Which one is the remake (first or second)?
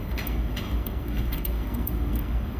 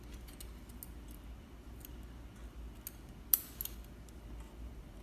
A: first